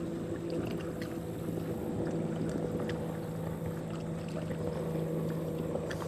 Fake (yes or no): no